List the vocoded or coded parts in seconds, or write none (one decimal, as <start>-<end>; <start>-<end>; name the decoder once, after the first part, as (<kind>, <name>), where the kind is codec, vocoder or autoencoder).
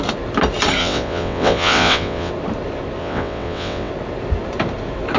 0.8-2.3 (vocoder, WaveNeXt); 3.0-3.9